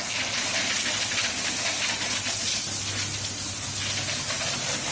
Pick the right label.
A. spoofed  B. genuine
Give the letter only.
B